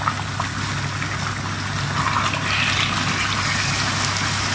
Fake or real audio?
real